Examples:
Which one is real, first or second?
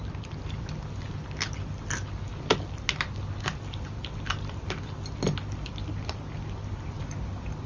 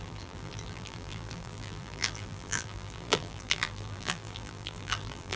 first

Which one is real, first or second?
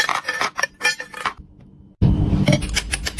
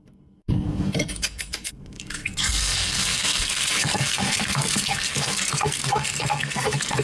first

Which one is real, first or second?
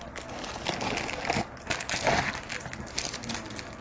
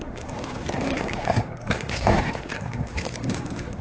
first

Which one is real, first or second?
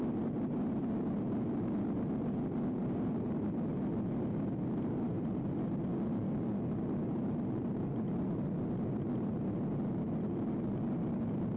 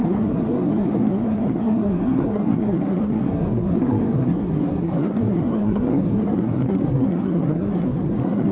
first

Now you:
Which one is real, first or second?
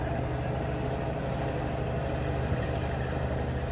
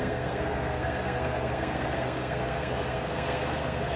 first